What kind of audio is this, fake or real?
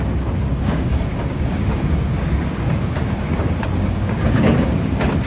fake